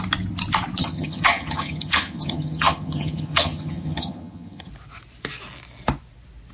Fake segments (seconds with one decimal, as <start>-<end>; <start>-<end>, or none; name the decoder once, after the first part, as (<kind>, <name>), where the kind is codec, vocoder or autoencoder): 0.8-4.7 (vocoder, HiFi-GAN)